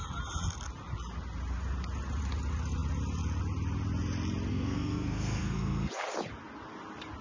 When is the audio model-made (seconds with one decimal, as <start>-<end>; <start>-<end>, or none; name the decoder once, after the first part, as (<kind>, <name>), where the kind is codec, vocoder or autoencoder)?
4.5-5.9 (codec, SNAC)